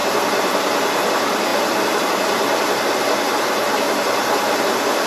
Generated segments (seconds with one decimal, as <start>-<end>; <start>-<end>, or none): none